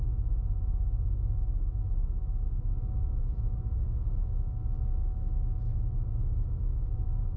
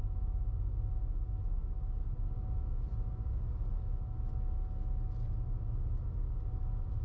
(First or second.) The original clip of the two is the second